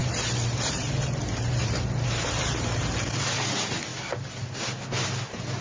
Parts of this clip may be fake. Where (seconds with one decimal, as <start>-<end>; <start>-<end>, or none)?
0.0-3.4